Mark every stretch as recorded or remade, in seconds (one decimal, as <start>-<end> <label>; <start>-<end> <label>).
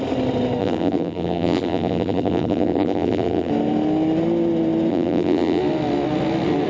0.0-0.6 recorded; 0.6-3.5 remade; 3.5-4.9 recorded; 4.9-5.6 remade; 5.6-6.7 recorded